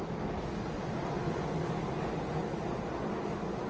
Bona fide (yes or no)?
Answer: yes